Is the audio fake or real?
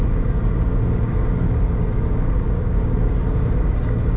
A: fake